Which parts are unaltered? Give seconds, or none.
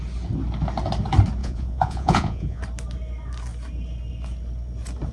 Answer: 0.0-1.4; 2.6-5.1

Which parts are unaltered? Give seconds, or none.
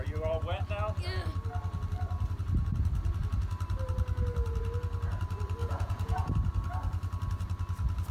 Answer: 0.0-5.6; 6.3-8.1